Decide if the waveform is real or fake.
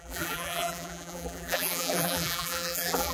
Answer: fake